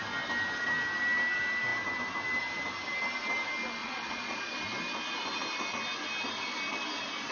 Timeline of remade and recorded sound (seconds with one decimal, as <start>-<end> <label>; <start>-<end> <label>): 0.0-3.8 recorded; 3.8-4.5 remade; 4.5-7.3 recorded